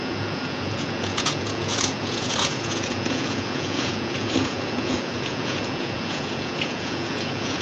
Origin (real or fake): fake